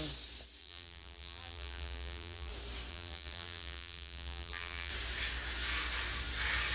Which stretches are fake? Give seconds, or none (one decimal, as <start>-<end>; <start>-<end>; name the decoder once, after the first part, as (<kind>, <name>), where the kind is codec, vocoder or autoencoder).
0.6-2.5 (vocoder, BigVGAN v2); 2.9-4.9